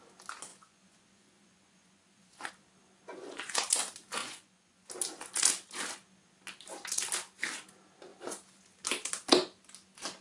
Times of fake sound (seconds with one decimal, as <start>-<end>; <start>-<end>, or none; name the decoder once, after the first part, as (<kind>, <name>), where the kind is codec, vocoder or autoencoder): 0.5-2.5 (vocoder, Vocos); 3.1-3.6; 4.2-4.9